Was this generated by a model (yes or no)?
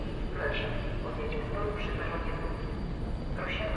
no